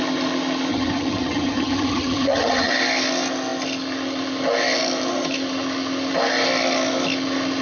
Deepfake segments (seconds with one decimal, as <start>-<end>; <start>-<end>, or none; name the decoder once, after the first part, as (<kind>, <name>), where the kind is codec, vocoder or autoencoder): 0.7-2.7 (vocoder, HiFi-GAN)